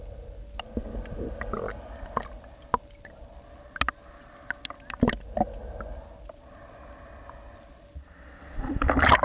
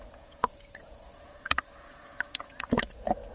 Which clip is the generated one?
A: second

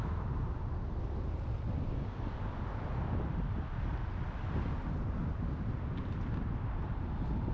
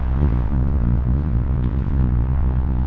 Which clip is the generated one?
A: second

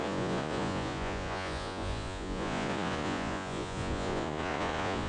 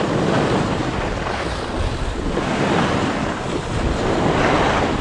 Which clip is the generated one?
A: first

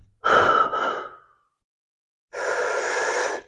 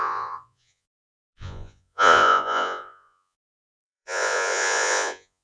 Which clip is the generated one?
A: second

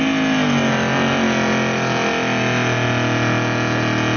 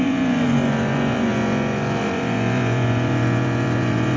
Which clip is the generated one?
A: second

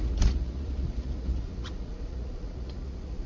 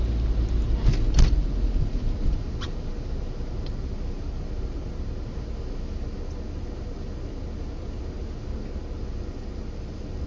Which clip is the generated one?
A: first